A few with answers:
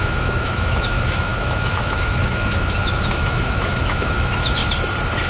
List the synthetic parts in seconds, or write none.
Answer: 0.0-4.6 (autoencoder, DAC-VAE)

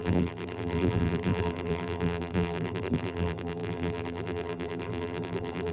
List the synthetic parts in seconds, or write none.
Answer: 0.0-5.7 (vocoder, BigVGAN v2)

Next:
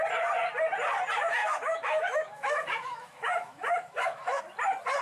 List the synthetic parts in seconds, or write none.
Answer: 1.4-4.4 (autoencoder, DAC-VAE)